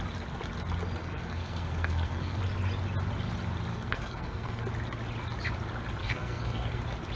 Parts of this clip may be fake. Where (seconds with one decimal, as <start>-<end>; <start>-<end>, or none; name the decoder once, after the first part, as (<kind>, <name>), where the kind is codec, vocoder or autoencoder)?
1.0-2.4 (codec, SNAC); 3.7-4.6; 6.0-6.8